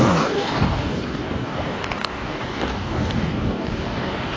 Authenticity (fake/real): fake